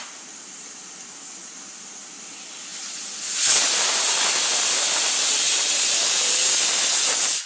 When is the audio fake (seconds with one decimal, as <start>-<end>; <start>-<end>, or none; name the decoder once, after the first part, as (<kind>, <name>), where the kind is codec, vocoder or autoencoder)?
none